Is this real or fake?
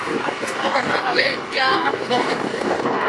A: fake